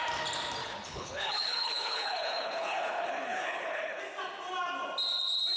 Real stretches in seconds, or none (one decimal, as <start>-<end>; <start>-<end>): 0.0-0.6; 4.0-5.6